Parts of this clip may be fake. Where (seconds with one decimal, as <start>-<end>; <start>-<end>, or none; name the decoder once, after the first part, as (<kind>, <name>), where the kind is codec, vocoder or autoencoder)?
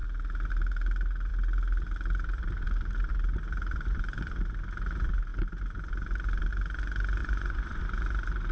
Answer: 7.2-7.8 (vocoder, Vocos)